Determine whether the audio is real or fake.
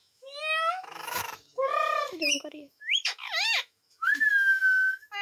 fake